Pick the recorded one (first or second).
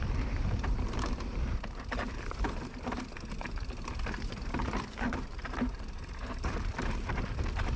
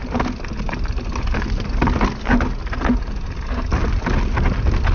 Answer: second